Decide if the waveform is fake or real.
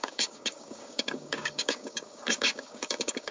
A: fake